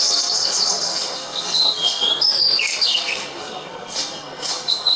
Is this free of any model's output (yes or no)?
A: no